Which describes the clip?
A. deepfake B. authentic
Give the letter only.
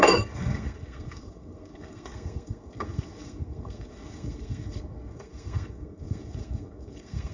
A